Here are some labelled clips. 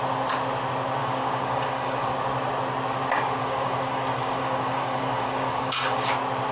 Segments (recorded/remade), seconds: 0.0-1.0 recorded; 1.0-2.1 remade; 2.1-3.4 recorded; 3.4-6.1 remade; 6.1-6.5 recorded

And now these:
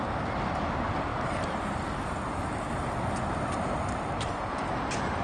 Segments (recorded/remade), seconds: 0.0-5.2 recorded

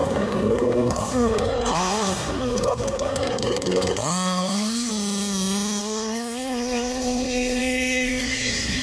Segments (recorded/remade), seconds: 0.0-4.9 remade; 4.9-5.8 recorded; 5.8-8.8 remade

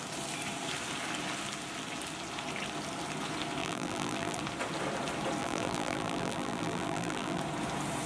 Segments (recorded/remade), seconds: 0.0-3.6 recorded; 3.6-4.4 remade; 4.4-5.4 recorded; 5.4-7.4 remade; 7.4-8.1 recorded

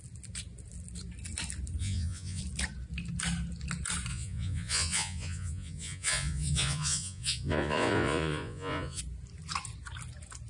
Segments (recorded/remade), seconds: 0.0-1.8 recorded; 1.8-2.4 remade; 2.4-4.1 recorded; 4.1-9.0 remade; 9.0-10.5 recorded